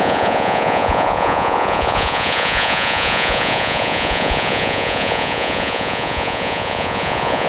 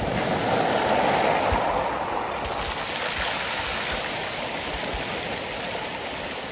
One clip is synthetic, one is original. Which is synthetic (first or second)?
first